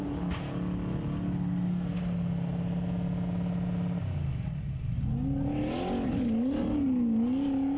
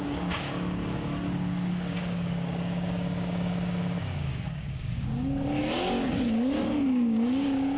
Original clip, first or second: first